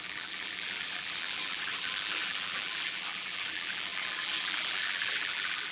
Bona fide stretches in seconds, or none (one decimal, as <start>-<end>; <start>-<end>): none